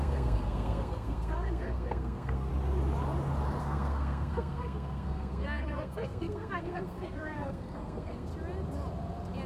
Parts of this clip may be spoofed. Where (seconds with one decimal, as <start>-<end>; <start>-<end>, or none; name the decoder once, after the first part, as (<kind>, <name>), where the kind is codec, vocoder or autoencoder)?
0.0-2.5 (codec, SNAC); 3.6-8.3